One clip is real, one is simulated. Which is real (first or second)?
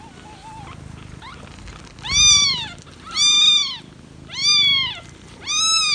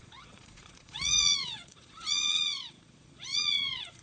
first